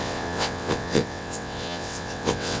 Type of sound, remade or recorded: remade